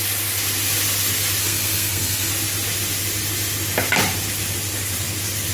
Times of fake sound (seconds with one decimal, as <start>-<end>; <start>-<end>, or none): 1.4-2.3